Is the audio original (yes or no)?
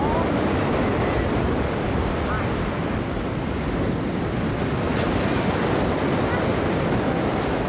yes